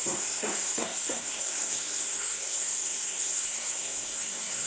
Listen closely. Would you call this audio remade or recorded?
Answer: remade